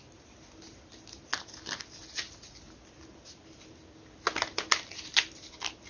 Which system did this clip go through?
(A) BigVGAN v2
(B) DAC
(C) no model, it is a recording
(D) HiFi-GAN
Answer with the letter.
C